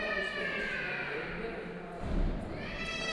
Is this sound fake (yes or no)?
no